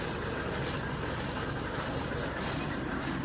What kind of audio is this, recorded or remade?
remade